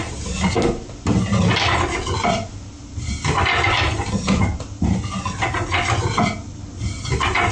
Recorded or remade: recorded